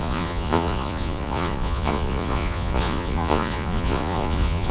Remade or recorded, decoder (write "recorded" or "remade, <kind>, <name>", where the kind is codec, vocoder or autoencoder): remade, vocoder, Vocos